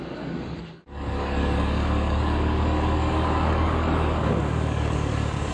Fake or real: fake